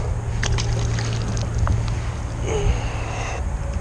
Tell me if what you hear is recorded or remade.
recorded